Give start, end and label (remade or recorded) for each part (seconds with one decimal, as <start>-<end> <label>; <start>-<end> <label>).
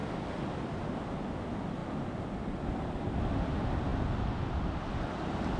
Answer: 0.0-5.6 recorded